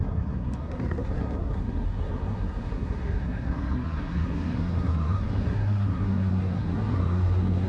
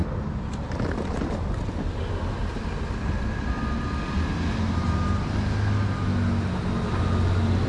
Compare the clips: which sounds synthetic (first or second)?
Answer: first